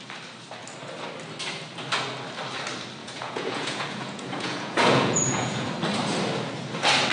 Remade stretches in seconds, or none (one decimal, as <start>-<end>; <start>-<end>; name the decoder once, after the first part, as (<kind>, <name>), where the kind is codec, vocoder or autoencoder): 3.0-5.7 (vocoder, Vocos)